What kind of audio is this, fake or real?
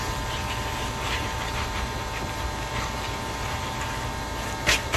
fake